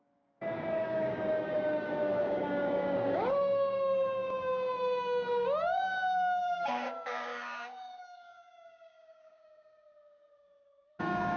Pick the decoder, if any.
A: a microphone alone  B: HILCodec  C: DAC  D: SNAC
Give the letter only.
C